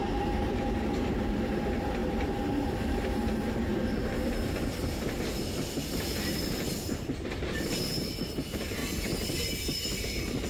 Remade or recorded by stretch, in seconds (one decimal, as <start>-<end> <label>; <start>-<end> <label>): 0.0-8.8 remade; 8.8-10.0 recorded; 10.0-10.5 remade